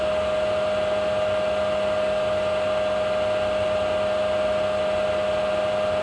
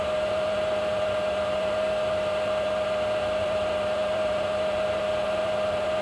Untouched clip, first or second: first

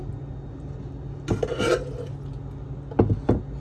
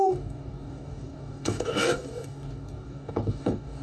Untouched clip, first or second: first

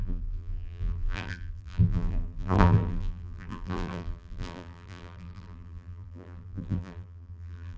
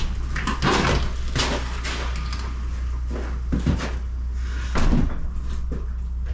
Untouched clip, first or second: second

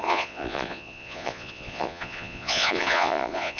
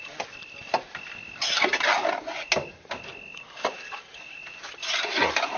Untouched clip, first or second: second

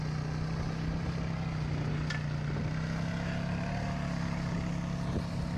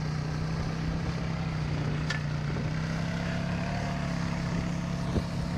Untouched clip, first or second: first